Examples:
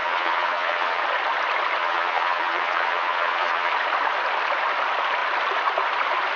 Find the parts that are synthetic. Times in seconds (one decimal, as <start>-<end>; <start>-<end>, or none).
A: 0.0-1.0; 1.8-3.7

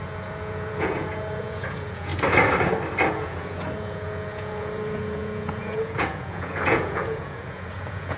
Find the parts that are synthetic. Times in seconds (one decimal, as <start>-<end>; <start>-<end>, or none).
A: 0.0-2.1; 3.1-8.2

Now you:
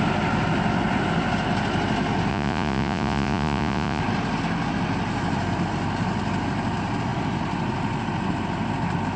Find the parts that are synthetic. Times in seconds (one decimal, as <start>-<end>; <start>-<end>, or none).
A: 2.3-4.0

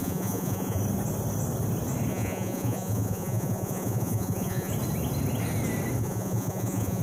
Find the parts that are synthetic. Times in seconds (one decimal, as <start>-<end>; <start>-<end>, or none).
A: 0.0-0.8; 2.1-4.7; 6.0-7.0

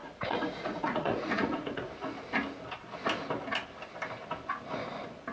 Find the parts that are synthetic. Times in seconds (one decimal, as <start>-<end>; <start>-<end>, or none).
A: 0.0-1.9